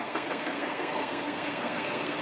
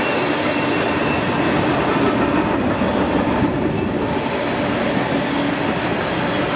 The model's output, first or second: first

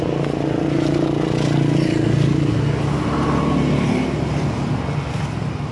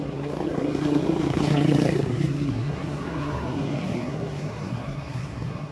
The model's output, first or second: second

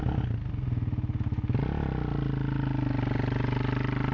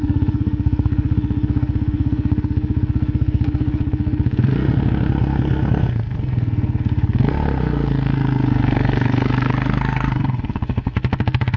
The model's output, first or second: second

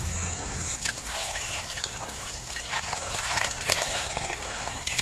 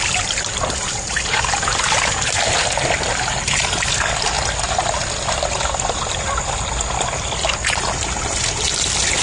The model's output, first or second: first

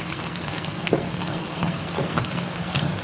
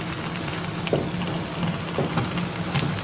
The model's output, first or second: first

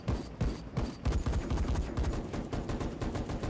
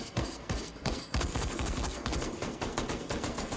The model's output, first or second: second